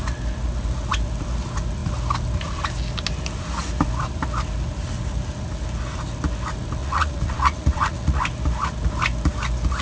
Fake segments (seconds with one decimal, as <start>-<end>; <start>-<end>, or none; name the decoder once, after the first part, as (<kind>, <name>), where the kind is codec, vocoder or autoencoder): 6.8-8.2 (vocoder, Vocos)